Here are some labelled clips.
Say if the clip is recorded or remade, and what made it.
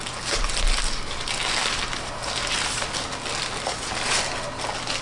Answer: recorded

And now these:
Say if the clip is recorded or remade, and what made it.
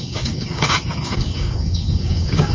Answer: remade, codec, DAC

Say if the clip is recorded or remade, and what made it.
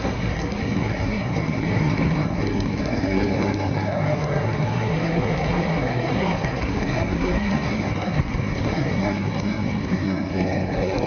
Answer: remade, codec, SNAC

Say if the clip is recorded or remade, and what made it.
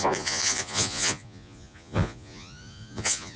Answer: remade, vocoder, Vocos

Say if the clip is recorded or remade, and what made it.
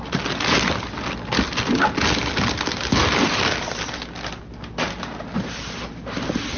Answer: recorded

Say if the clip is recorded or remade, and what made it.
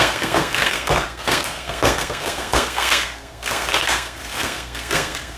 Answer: remade, codec, SNAC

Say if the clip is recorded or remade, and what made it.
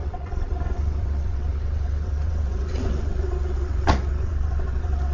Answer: remade, vocoder, WaveNeXt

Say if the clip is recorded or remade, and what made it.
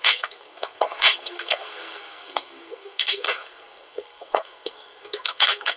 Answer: remade, codec, SNAC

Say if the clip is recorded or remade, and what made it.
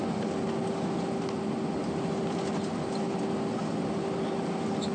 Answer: recorded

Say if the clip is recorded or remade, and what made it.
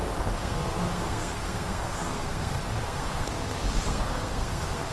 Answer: remade, codec, SNAC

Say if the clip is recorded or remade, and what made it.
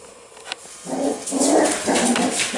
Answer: recorded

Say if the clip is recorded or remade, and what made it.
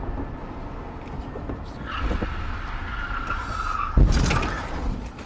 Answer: recorded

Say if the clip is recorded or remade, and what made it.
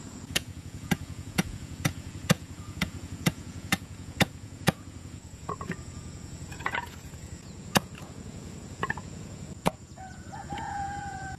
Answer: remade, vocoder, Vocos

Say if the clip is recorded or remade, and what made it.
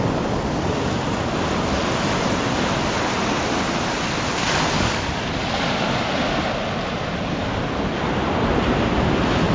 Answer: recorded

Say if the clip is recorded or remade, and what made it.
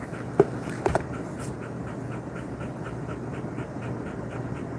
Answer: recorded